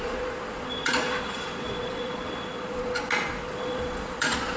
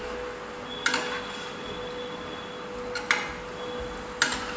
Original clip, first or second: second